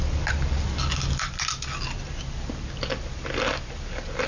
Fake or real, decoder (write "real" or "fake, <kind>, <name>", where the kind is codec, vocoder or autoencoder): real